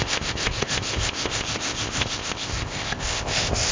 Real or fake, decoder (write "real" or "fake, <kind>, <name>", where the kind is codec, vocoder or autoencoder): fake, codec, ZipCodec